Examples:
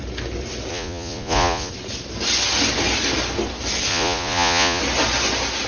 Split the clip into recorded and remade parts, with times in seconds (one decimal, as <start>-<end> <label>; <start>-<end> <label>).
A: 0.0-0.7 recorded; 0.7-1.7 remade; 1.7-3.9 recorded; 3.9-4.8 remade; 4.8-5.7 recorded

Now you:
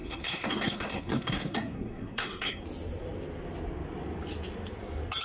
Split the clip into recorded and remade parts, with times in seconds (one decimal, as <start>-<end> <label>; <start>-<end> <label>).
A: 0.0-2.6 remade; 2.6-5.2 recorded

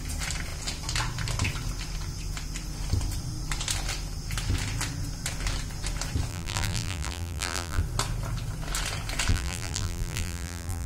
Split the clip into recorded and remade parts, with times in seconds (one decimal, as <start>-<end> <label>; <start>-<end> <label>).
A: 0.0-6.3 recorded; 6.3-7.8 remade; 7.8-9.3 recorded; 9.3-10.9 remade

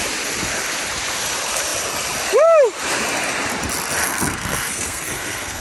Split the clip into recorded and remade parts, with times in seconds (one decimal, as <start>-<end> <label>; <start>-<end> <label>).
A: 0.0-4.0 recorded; 4.0-5.6 remade